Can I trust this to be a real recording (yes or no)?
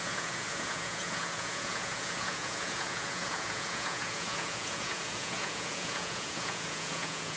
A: no